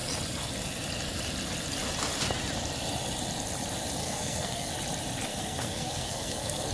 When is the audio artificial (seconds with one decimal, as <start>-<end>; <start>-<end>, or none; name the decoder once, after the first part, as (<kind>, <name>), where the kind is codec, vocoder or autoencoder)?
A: 4.0-4.7 (codec, SNAC); 5.3-6.7